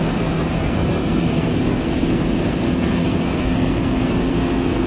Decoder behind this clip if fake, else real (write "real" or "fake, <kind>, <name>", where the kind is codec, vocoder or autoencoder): fake, codec, SNAC